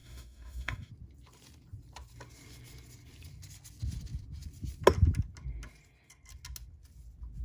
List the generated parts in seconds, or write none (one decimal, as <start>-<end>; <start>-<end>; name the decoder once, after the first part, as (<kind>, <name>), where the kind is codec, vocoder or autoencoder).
0.0-0.9 (autoencoder, DAC-VAE)